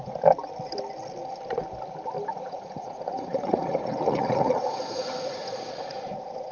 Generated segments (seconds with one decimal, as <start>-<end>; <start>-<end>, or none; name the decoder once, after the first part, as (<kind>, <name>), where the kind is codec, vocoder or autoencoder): 2.3-6.5 (vocoder, Vocos)

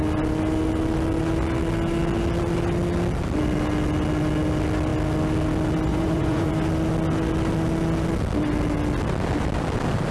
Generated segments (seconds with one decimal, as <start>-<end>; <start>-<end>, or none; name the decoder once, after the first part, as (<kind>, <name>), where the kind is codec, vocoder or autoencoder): 5.9-6.5 (vocoder, Vocos)

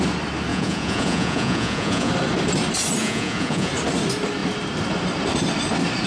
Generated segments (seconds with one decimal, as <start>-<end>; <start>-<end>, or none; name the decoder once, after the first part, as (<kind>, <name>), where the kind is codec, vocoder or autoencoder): 0.5-2.1 (vocoder, Vocos); 3.0-3.7

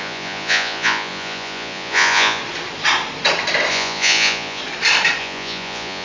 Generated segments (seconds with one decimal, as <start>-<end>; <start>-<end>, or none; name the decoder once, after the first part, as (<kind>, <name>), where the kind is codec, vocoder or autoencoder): 0.0-2.4 (vocoder, Vocos); 3.7-4.6; 5.2-6.0

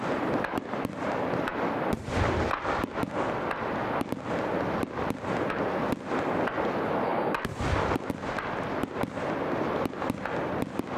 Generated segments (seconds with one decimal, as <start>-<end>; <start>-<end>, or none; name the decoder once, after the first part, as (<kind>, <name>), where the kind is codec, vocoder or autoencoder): none

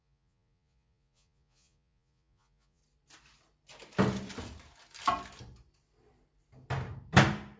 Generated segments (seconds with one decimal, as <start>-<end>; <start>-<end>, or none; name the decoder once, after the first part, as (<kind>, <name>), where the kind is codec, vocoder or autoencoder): 0.0-2.8 (vocoder, Vocos)

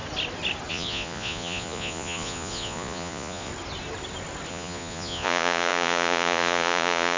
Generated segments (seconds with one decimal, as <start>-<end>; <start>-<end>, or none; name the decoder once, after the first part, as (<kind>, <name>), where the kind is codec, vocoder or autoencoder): 0.7-3.5 (vocoder, Vocos); 4.5-7.2